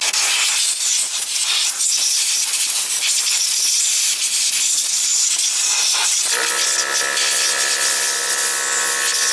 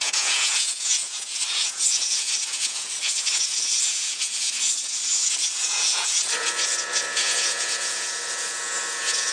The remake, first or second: second